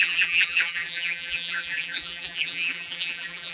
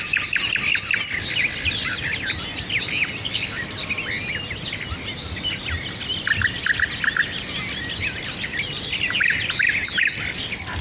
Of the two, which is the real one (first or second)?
second